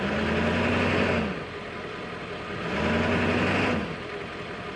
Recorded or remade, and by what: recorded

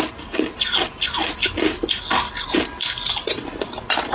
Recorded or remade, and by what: recorded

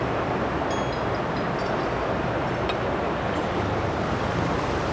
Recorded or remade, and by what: recorded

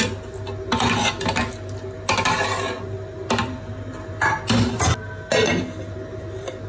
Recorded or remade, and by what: recorded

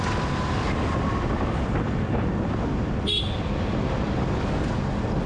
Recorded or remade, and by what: recorded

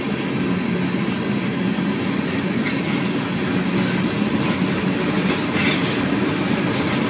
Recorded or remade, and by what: recorded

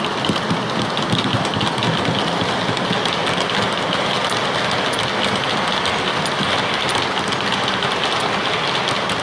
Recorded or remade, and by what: recorded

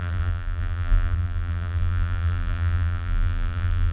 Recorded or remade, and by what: remade, vocoder, BigVGAN v2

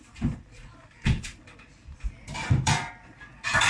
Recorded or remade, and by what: remade, vocoder, BigVGAN v2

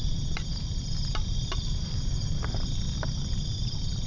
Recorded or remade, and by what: remade, vocoder, BigVGAN v2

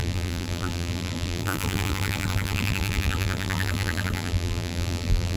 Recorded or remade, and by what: remade, vocoder, BigVGAN v2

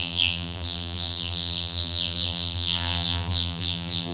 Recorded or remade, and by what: remade, vocoder, BigVGAN v2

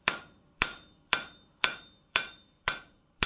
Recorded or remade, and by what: remade, vocoder, BigVGAN v2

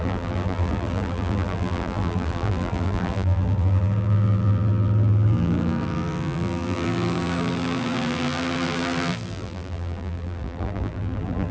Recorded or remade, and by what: remade, vocoder, BigVGAN v2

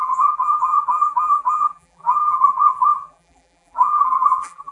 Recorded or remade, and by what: remade, vocoder, BigVGAN v2